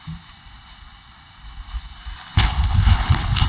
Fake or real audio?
fake